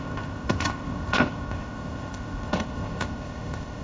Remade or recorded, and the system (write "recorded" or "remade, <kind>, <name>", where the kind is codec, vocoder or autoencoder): remade, codec, ZipCodec